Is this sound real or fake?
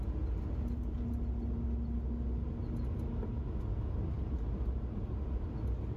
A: real